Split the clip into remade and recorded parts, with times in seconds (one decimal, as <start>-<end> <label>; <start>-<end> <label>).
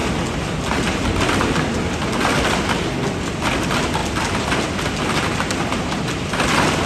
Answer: 0.0-6.9 recorded